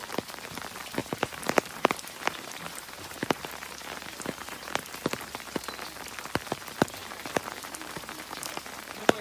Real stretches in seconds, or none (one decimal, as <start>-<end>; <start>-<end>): 0.0-1.0; 4.9-7.0; 8.6-9.2